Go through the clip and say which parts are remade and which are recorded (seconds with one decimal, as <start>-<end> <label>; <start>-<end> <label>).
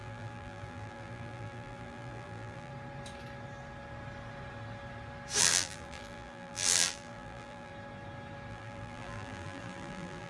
0.0-2.7 remade; 2.7-5.4 recorded; 5.4-7.7 remade; 7.7-8.5 recorded; 8.5-10.3 remade